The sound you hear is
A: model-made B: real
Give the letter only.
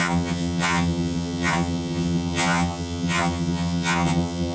A